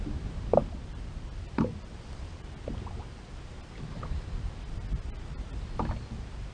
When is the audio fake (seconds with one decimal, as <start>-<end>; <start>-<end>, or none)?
none